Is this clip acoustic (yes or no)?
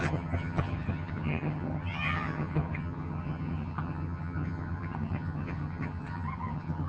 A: no